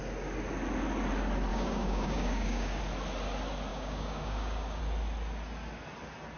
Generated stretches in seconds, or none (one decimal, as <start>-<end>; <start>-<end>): 1.5-2.8; 3.7-4.8